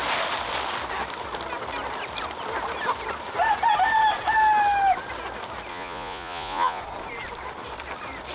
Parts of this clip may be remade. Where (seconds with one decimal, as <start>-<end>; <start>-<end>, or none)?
5.7-6.8